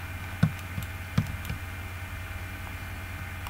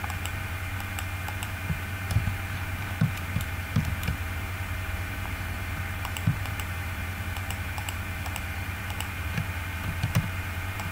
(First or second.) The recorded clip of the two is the first